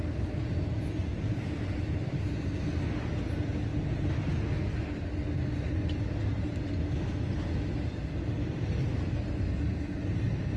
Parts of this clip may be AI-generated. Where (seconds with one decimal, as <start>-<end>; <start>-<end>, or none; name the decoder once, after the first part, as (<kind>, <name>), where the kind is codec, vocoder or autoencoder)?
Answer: 1.1-2.7 (vocoder, BigVGAN v2)